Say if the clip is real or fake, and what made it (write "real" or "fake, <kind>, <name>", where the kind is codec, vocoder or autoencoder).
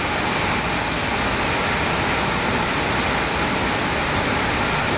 real